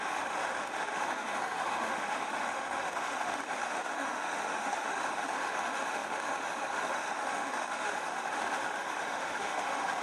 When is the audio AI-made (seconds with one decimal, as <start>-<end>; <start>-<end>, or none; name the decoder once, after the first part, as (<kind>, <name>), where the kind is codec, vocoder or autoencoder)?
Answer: 0.0-10.0 (autoencoder, DAC-VAE)